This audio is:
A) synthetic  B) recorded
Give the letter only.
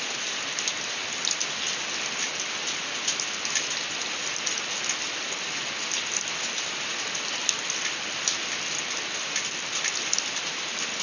B